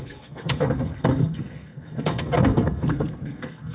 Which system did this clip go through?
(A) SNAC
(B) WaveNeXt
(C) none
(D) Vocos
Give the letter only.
A